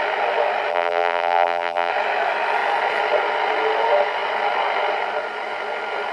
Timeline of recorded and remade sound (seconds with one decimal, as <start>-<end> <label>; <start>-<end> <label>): 0.0-0.7 recorded; 0.7-1.9 remade; 1.9-6.1 recorded